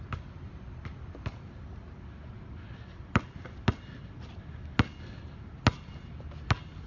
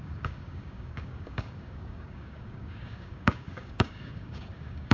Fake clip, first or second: second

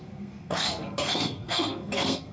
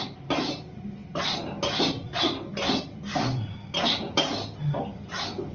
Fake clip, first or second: first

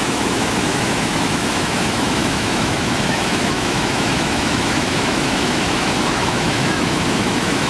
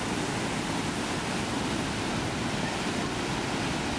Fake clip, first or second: first